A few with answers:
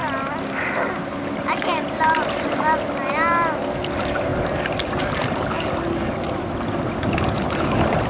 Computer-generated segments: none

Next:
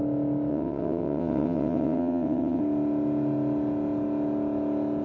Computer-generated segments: 0.5-2.6 (vocoder, WaveNeXt)

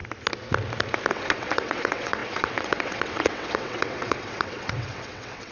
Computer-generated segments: 1.1-5.5 (vocoder, WaveNeXt)